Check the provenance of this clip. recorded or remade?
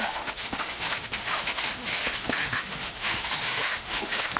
remade